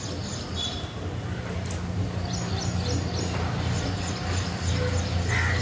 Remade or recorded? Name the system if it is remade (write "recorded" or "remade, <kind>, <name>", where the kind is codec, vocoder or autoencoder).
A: recorded